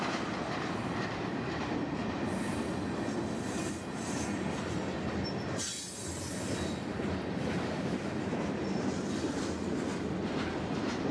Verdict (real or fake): real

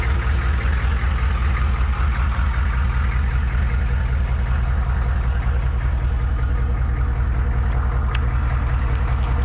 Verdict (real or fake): real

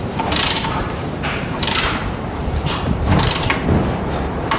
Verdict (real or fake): fake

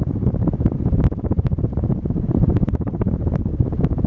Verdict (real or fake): fake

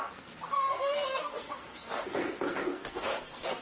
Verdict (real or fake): fake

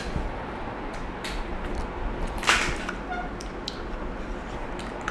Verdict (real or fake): real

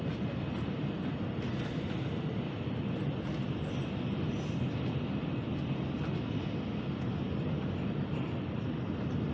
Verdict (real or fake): real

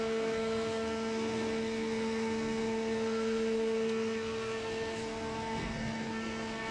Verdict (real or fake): fake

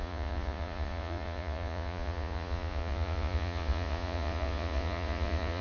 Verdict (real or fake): fake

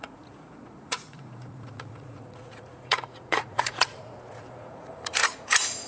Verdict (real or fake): fake